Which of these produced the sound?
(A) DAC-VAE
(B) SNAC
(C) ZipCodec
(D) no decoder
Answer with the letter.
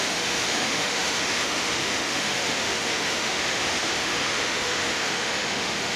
A